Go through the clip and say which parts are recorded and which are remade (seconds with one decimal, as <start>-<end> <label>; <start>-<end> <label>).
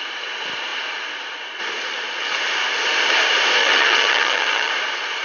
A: 0.0-3.6 recorded; 3.6-4.7 remade; 4.7-5.2 recorded